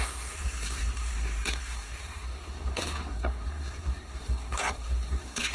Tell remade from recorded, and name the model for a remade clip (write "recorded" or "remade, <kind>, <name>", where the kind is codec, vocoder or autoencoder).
remade, codec, SNAC